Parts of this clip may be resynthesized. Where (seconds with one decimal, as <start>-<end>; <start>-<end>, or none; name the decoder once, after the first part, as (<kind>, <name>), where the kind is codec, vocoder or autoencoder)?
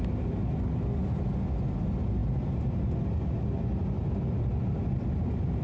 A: none